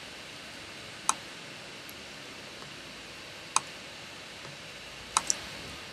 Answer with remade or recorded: recorded